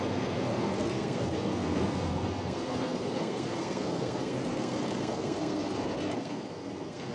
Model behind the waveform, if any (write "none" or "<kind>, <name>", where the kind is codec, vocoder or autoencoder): codec, SNAC